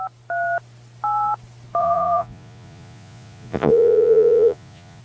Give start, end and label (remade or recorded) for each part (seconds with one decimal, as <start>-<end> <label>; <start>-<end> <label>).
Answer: 0.0-1.8 recorded; 1.8-5.0 remade